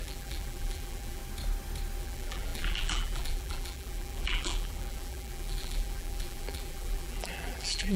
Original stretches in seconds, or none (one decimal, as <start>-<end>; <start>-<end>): 1.2-2.0